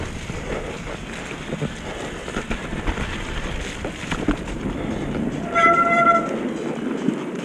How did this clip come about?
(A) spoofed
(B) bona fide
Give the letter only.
B